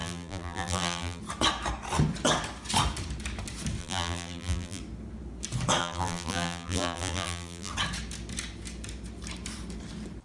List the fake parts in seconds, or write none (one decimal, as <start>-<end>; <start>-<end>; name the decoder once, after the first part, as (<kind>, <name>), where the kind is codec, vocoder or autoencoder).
0.0-1.2 (vocoder, BigVGAN v2); 3.8-4.8; 5.8-7.7